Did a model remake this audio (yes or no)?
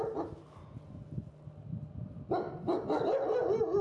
no